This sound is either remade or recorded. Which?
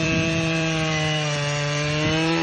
remade